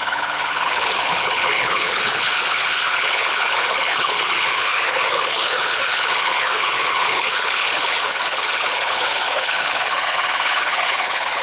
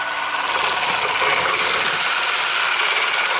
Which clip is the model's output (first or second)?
first